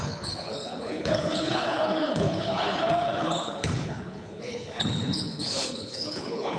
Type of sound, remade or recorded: remade